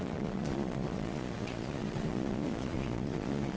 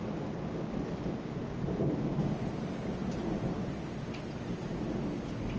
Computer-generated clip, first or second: first